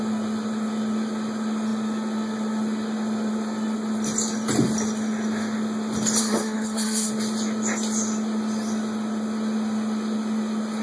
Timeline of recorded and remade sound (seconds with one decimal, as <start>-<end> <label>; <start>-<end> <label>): 0.0-6.2 recorded; 6.2-7.1 remade; 7.1-10.8 recorded